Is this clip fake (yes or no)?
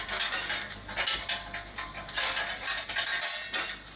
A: no